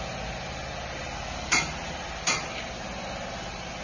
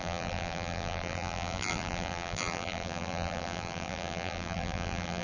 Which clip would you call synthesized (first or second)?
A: second